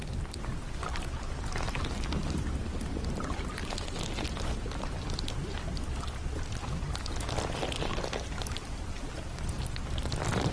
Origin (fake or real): real